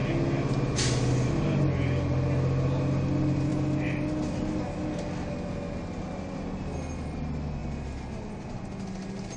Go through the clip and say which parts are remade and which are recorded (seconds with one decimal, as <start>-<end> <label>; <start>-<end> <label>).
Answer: 0.0-9.4 recorded